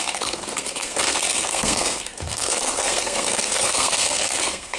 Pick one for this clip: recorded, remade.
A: remade